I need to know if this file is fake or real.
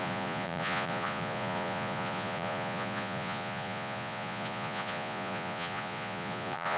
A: fake